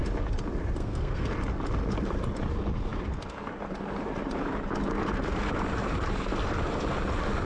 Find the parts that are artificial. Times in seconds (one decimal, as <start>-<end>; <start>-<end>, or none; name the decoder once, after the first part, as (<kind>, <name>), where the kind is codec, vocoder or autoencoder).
0.8-1.3 (codec, SNAC)